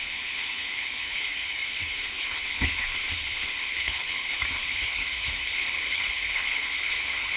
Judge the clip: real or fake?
fake